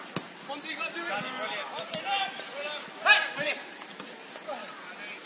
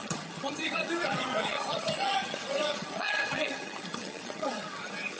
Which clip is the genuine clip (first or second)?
first